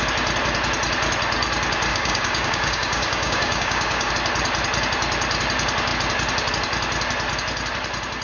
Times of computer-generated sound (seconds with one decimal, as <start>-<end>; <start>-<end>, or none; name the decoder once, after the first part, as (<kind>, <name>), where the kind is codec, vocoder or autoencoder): 1.9-4.1 (codec, DAC)